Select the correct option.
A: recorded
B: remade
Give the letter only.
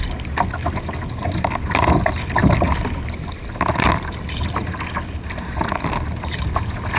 A